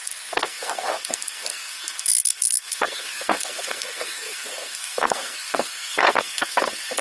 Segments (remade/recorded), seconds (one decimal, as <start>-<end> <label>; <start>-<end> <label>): 0.0-7.0 remade